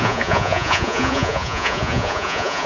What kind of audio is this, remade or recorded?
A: remade